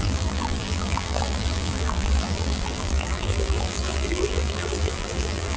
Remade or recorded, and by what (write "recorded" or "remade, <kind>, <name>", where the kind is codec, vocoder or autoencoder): remade, vocoder, BigVGAN v2